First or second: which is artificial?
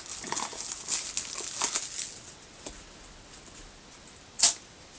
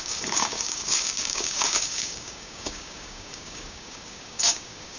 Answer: second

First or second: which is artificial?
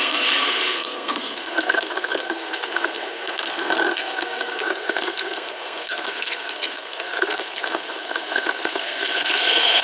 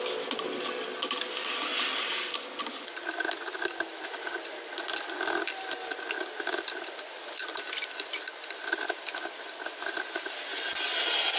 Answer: first